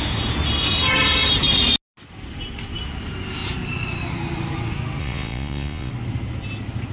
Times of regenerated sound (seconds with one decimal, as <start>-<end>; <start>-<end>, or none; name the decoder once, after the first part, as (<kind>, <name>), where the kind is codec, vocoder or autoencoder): 5.0-5.9 (vocoder, Vocos)

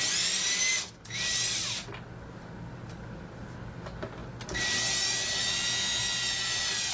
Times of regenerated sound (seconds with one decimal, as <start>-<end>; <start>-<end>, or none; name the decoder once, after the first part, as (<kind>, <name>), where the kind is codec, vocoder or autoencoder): none

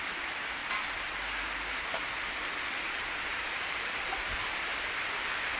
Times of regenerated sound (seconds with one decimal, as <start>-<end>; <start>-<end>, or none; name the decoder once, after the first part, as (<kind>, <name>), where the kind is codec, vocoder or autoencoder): 3.3-4.0 (vocoder, BigVGAN v2); 4.7-5.6

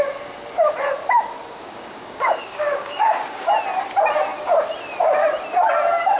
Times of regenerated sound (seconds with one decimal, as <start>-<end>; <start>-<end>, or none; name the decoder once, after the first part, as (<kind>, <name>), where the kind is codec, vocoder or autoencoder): 1.6-3.5 (codec, DAC)

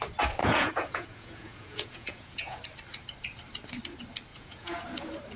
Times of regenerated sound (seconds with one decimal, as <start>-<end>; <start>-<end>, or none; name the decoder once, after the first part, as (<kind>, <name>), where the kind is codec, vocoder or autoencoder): 0.4-2.6 (vocoder, Vocos); 4.3-4.8